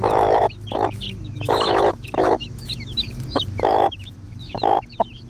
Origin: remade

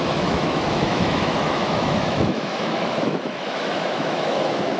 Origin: remade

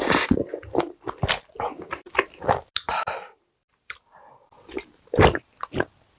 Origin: recorded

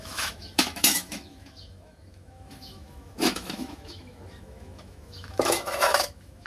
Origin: remade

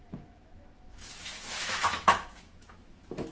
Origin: remade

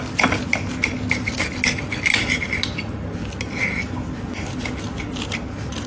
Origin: recorded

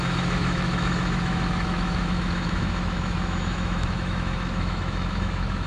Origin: remade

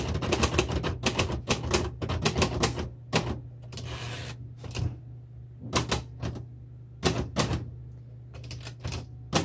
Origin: recorded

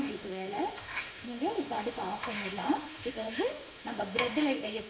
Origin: remade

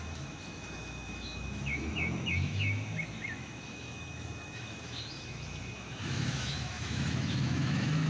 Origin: remade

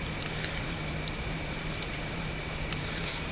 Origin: recorded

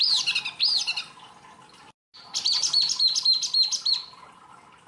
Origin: recorded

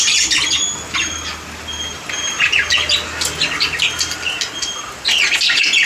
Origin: recorded